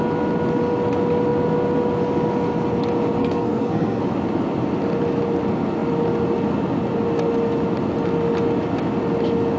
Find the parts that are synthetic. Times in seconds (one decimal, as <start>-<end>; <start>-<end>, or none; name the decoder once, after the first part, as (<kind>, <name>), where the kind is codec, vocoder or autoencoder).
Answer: 3.2-4.0 (codec, SNAC)